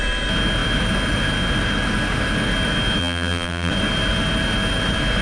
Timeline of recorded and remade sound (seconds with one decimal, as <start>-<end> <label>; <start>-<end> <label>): 0.0-3.0 recorded; 3.0-3.7 remade; 3.7-5.2 recorded